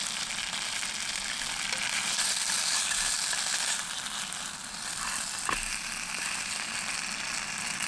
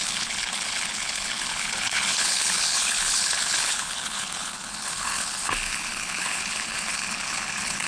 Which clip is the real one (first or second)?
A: first